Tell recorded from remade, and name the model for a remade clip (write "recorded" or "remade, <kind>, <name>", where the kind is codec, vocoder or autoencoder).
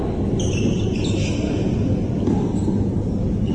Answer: recorded